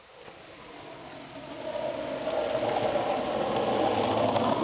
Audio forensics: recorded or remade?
recorded